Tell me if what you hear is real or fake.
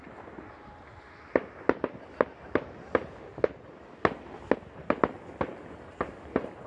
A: real